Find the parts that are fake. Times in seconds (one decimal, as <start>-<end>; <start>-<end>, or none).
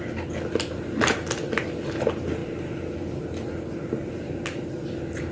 none